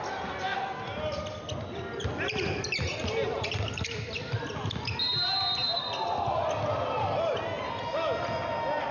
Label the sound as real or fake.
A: real